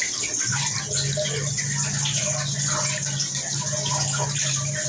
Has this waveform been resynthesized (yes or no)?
no